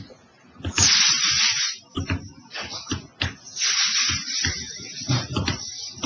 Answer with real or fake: real